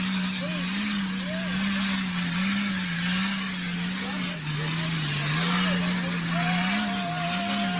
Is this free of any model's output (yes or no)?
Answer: yes